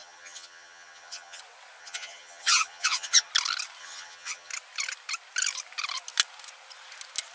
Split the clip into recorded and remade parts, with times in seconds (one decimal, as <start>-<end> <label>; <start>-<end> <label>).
0.0-1.4 remade; 1.4-1.8 recorded; 1.8-3.3 remade; 3.3-3.8 recorded; 3.8-4.5 remade; 4.5-7.3 recorded